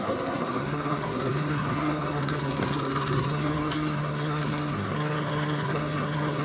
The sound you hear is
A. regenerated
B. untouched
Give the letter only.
A